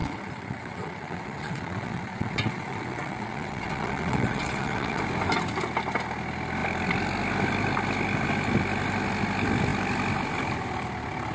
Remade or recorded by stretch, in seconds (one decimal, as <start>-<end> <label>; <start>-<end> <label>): 0.0-5.0 remade; 5.0-11.3 recorded